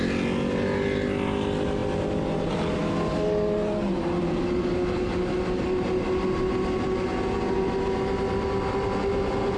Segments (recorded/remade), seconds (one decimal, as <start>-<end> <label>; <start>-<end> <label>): 0.0-9.6 recorded